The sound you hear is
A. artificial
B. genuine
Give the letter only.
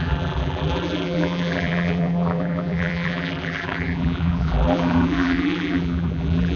A